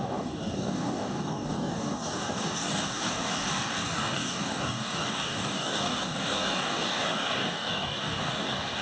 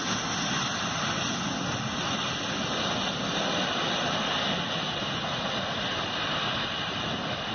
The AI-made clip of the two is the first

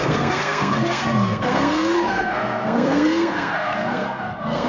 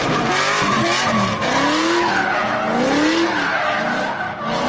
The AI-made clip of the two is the first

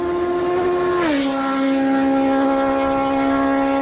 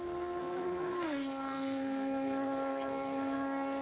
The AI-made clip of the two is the second